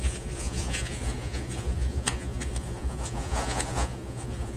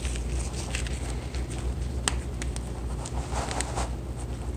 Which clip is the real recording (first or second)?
second